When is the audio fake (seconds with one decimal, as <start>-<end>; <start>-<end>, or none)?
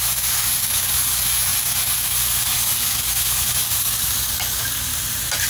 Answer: 0.0-4.9